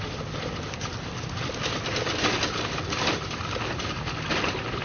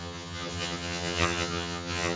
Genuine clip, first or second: first